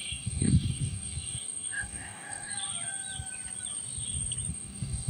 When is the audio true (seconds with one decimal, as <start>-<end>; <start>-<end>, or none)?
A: 2.5-4.5